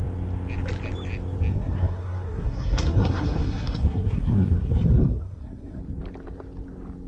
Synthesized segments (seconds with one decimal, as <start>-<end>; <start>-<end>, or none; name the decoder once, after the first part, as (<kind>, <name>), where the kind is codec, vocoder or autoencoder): 1.5-5.8 (codec, SNAC)